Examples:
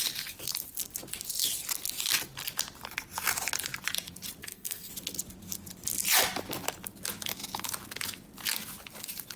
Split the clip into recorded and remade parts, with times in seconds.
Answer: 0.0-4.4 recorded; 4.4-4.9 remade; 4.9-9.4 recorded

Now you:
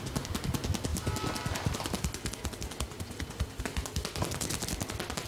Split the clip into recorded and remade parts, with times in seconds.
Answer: 0.0-5.3 recorded

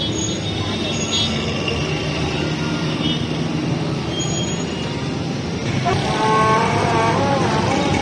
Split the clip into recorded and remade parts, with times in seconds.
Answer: 0.0-1.8 recorded; 1.8-2.4 remade; 2.4-3.6 recorded; 3.6-4.2 remade; 4.2-8.0 recorded

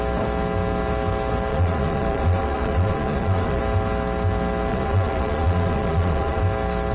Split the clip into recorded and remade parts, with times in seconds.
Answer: 0.0-1.5 recorded; 1.5-3.6 remade; 3.6-4.7 recorded; 4.7-6.4 remade; 6.4-6.9 recorded

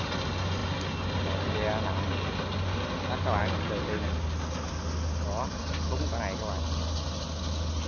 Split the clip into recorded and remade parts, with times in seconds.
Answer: 0.0-7.9 recorded

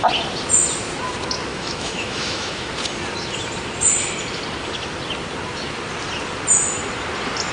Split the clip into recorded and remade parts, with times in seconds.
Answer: 0.0-1.5 recorded; 1.5-2.7 remade; 2.7-7.5 recorded